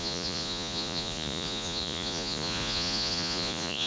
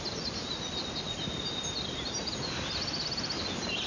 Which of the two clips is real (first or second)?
second